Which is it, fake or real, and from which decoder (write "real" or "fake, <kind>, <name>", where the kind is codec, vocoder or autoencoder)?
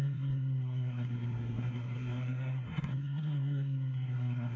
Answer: fake, codec, SNAC